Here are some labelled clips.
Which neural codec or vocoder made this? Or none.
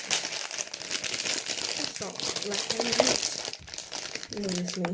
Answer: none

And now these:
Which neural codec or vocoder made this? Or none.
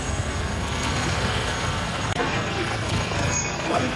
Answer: codec, SNAC